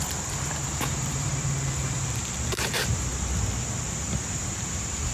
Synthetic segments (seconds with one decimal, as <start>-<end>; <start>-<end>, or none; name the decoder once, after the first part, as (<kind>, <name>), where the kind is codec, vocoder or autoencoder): 0.0-1.3 (vocoder, BigVGAN v2); 1.8-3.1; 3.9-5.1